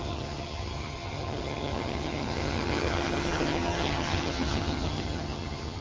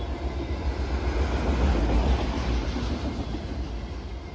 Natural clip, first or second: second